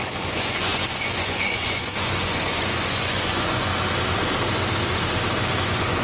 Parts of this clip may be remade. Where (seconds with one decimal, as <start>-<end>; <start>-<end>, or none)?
0.0-3.7; 5.6-6.0